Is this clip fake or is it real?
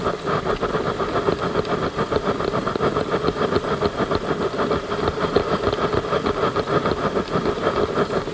real